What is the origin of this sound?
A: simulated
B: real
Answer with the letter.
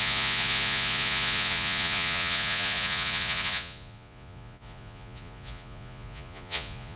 A